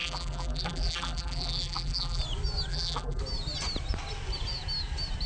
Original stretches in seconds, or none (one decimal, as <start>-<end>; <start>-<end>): 2.2-2.7; 3.2-5.3